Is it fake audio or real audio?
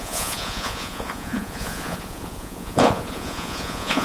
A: fake